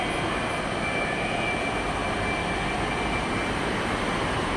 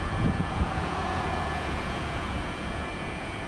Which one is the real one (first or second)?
first